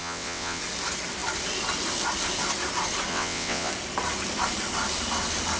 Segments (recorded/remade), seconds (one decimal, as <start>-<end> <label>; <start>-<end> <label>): 0.0-0.6 remade; 0.6-3.1 recorded; 3.1-3.7 remade; 3.7-5.6 recorded